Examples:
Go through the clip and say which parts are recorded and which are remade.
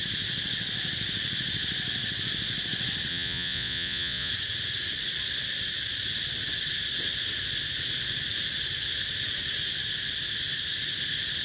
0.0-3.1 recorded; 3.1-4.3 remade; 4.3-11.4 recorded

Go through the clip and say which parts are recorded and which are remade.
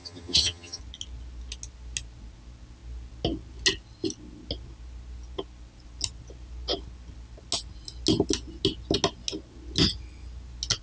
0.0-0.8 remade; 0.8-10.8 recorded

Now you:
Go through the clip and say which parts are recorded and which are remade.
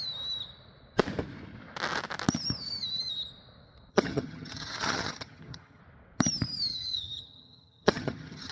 0.0-3.9 recorded; 3.9-5.8 remade; 5.8-6.7 recorded; 6.7-8.5 remade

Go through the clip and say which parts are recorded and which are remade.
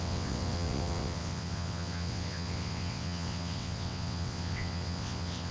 0.0-5.5 remade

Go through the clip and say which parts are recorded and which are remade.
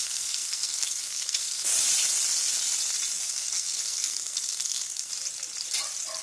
0.0-1.7 remade; 1.7-3.2 recorded; 3.2-5.1 remade; 5.1-6.2 recorded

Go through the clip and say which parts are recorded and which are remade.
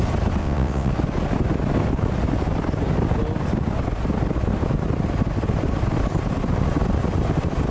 0.0-0.4 recorded; 0.4-0.9 remade; 0.9-7.7 recorded